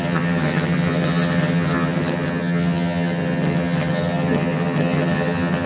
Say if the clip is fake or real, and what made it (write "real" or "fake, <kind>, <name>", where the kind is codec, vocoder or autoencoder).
fake, vocoder, HiFi-GAN